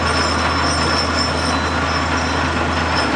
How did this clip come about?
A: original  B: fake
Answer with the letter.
A